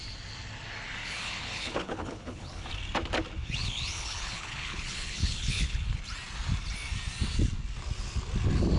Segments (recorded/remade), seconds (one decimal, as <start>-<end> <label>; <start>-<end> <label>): 0.0-1.0 recorded; 1.0-2.7 remade; 2.7-3.4 recorded; 3.4-6.0 remade; 6.0-8.8 recorded